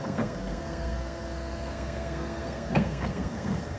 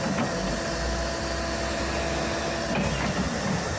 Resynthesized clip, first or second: first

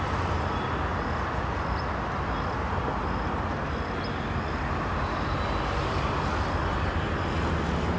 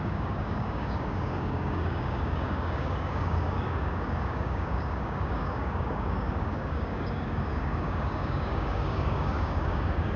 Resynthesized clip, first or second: second